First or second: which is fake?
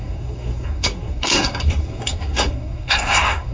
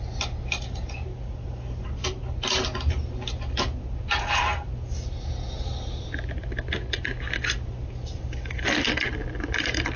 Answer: first